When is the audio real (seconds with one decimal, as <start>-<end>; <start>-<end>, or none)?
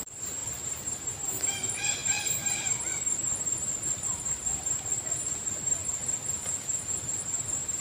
0.4-1.1; 5.8-6.8